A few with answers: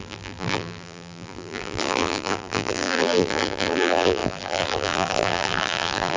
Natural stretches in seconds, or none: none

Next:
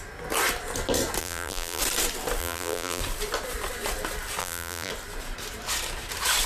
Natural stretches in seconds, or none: 0.0-1.2; 1.8-2.4; 3.0-4.4; 4.9-6.5

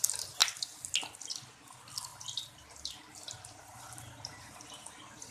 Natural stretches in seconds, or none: 0.0-2.1; 2.8-3.7; 4.6-5.3

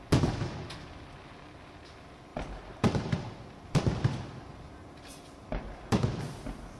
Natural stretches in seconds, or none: 0.0-2.3; 6.2-6.8